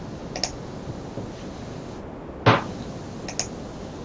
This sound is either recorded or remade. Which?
recorded